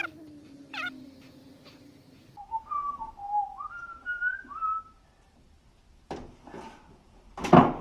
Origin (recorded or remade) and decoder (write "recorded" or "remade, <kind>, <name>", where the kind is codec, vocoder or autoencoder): recorded